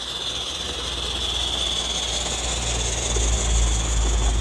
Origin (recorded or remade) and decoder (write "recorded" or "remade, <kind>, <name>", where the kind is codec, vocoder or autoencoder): recorded